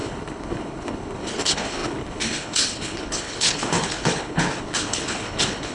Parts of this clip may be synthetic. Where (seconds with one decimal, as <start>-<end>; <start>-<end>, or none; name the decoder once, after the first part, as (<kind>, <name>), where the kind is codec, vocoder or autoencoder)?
0.0-5.7 (codec, HILCodec)